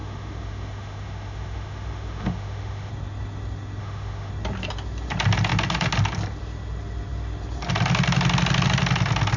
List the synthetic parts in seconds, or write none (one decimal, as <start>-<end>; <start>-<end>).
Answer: 0.0-2.9; 3.8-4.3